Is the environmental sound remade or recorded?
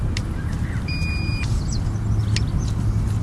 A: recorded